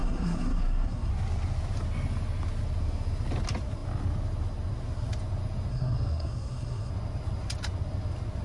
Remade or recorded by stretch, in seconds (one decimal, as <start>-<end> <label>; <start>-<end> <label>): 0.0-1.1 remade; 1.1-5.7 recorded; 5.7-6.9 remade; 6.9-8.4 recorded